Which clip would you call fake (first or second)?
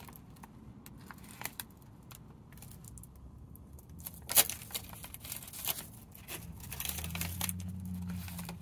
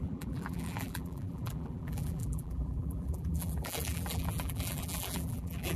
second